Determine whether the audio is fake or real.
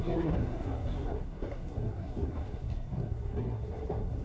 fake